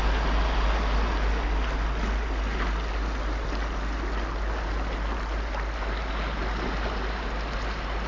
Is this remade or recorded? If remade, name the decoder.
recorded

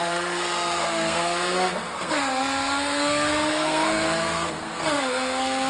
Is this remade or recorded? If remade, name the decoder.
remade, codec, SNAC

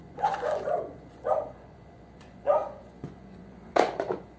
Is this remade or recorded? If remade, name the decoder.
remade, vocoder, Vocos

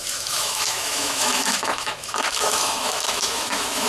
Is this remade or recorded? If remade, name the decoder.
remade, autoencoder, DAC-VAE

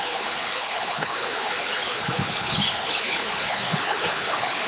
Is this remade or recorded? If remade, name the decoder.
remade, codec, HILCodec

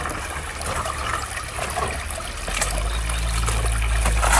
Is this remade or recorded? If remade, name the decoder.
recorded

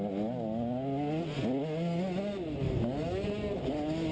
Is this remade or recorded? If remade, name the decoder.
recorded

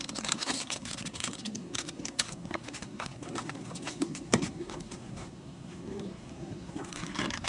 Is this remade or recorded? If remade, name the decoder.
remade, codec, SNAC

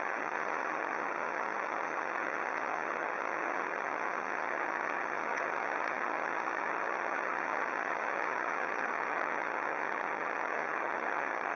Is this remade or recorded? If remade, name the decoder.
remade, vocoder, HiFi-GAN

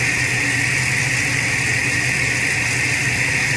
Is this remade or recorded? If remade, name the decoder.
recorded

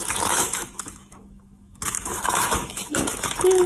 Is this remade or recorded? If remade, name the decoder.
remade, autoencoder, DAC-VAE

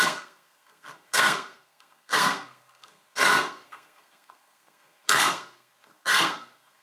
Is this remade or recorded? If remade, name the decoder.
remade, codec, SNAC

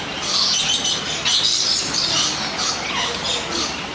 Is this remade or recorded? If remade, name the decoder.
recorded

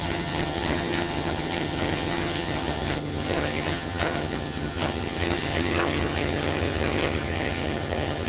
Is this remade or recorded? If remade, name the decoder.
remade, vocoder, HiFi-GAN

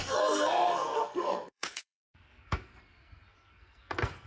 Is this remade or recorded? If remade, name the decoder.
remade, codec, SNAC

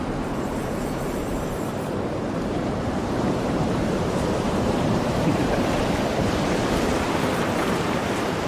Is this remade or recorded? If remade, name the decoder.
remade, vocoder, BigVGAN v2